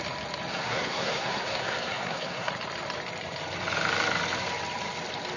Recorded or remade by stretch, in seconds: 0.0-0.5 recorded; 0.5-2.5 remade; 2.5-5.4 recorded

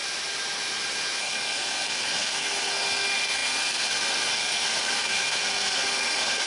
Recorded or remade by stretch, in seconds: 0.0-1.2 recorded; 1.2-6.5 remade